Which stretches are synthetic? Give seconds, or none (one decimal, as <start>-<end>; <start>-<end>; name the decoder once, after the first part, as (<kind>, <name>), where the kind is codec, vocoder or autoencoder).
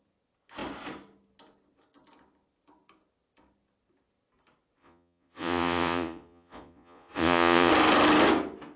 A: 4.8-7.7 (vocoder, Vocos)